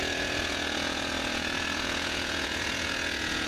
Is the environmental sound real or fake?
fake